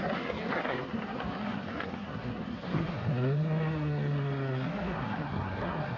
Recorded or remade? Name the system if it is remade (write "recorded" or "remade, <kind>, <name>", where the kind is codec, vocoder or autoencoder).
remade, codec, SNAC